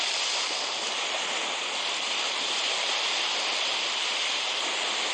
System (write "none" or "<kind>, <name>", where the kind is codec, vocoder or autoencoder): none